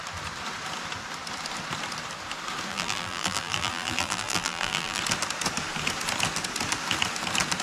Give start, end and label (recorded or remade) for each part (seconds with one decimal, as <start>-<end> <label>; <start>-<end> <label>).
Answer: 0.0-2.7 recorded; 2.7-5.0 remade; 5.0-7.6 recorded

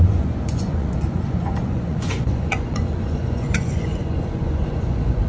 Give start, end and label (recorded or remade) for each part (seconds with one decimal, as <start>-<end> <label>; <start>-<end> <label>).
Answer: 0.0-5.3 remade

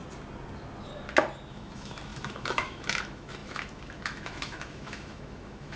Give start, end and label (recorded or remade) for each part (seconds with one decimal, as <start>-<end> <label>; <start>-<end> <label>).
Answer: 0.0-1.5 recorded; 1.5-5.8 remade

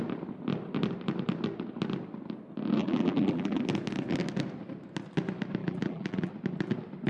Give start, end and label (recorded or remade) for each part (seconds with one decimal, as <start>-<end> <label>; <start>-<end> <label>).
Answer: 0.0-2.8 recorded; 2.8-3.6 remade; 3.6-5.6 recorded; 5.6-6.3 remade; 6.3-7.1 recorded

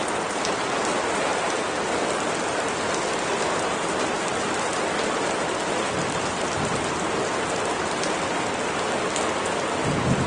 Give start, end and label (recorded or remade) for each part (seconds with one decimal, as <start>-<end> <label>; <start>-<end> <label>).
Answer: 0.0-10.3 recorded

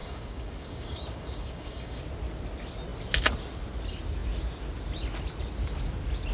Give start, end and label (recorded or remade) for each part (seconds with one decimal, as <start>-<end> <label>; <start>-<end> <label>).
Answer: 0.0-2.0 remade; 2.0-6.3 recorded